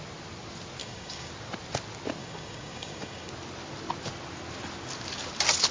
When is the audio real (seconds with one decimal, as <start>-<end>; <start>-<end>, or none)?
0.0-0.8; 1.3-2.2; 3.3-5.7